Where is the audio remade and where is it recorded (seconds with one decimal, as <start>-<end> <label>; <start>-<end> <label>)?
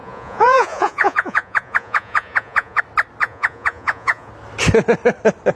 0.0-2.8 remade; 2.8-3.2 recorded; 3.2-4.3 remade; 4.3-5.6 recorded